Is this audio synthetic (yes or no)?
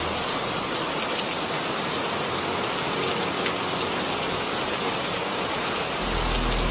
no